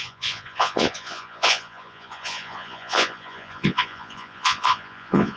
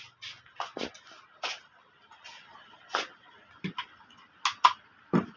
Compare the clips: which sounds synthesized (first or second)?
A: first